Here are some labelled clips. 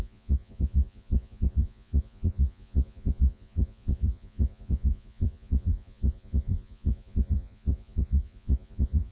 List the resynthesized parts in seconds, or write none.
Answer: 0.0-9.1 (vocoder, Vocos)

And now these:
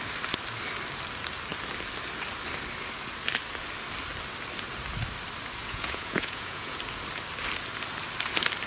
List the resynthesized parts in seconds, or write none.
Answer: 5.6-6.8 (vocoder, Vocos)

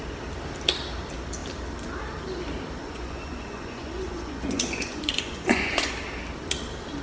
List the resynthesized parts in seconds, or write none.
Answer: 2.8-5.9 (vocoder, Vocos)

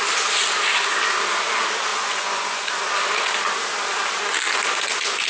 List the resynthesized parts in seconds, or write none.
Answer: 1.9-2.7 (vocoder, Vocos)

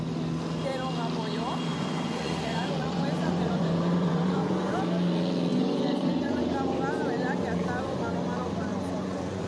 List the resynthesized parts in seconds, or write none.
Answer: 1.7-4.7 (vocoder, Vocos); 5.5-6.4; 8.7-9.5

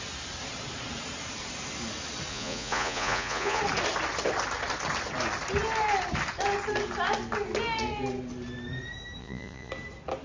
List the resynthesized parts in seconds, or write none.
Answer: 2.3-3.6 (vocoder, Vocos); 9.2-9.7

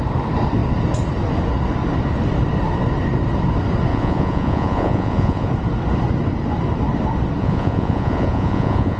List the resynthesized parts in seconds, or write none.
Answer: 3.9-5.5 (vocoder, Vocos); 7.4-9.0

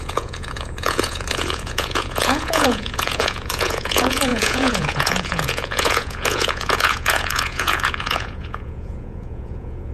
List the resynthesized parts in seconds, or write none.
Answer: 0.0-9.9 (vocoder, Vocos)